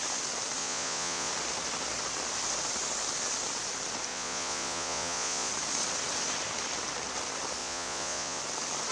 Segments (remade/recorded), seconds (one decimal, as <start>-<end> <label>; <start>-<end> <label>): 0.0-0.6 recorded; 0.6-1.3 remade; 1.3-4.1 recorded; 4.1-5.5 remade; 5.5-7.6 recorded; 7.6-8.4 remade; 8.4-8.9 recorded